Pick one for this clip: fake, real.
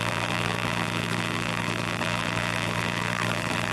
fake